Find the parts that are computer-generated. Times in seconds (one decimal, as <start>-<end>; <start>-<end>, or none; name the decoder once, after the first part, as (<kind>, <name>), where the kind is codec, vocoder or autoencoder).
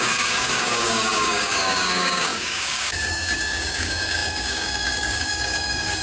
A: 0.0-6.0 (codec, DAC)